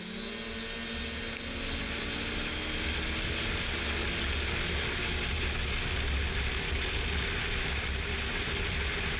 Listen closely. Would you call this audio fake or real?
real